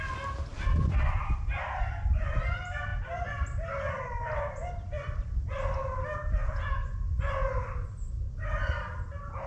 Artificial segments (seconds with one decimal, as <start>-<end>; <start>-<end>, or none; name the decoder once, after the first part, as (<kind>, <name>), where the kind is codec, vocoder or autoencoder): 6.4-7.3 (vocoder, Vocos)